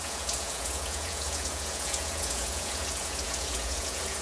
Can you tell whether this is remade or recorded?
remade